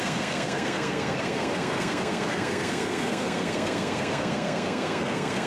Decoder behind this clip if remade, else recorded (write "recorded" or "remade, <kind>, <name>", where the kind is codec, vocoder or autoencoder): remade, codec, SNAC